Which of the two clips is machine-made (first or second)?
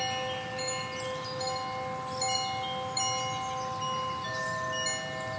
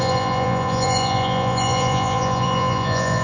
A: second